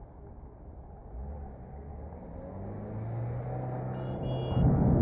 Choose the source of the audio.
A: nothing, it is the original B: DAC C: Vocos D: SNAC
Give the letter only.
A